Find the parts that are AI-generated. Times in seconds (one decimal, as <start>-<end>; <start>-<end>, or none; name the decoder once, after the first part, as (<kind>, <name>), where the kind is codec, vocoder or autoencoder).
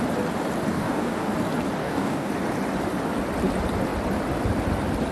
0.7-1.3 (codec, DAC); 1.8-2.3